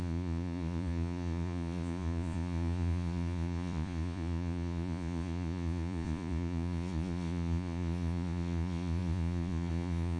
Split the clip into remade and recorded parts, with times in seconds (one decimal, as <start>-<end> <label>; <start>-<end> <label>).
0.0-10.2 remade